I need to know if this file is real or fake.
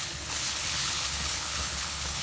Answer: fake